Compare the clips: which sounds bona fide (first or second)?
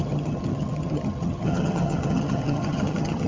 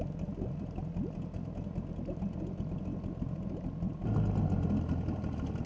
second